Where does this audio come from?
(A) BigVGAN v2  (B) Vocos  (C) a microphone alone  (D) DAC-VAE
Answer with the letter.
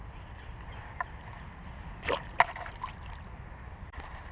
C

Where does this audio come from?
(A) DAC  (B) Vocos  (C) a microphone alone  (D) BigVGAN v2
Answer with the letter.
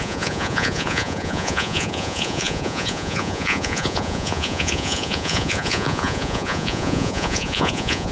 B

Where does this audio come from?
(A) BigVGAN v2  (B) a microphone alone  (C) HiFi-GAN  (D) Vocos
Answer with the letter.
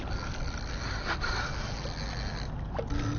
B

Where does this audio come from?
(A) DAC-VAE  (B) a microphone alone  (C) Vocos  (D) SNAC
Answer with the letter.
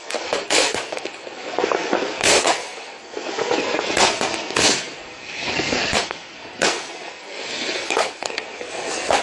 D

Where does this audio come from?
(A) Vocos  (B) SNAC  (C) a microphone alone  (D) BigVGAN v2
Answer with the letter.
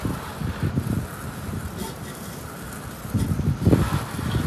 C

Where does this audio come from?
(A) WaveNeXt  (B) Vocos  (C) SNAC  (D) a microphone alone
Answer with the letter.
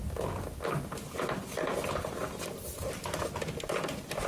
D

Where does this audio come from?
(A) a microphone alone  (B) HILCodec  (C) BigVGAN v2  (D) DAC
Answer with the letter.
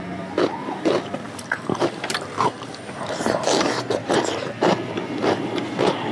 C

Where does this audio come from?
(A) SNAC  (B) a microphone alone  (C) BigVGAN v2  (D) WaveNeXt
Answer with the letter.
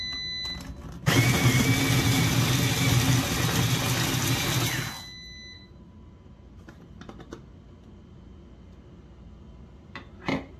B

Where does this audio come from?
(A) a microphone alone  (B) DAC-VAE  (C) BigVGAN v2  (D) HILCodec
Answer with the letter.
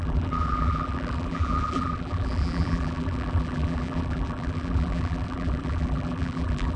C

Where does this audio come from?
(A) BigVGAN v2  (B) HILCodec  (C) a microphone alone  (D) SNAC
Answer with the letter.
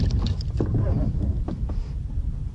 C